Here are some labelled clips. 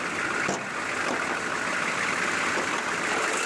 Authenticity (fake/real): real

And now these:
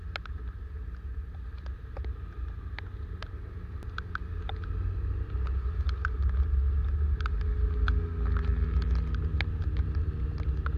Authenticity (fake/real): real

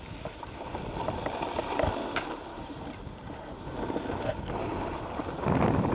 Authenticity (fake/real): real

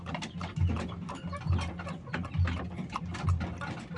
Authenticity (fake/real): real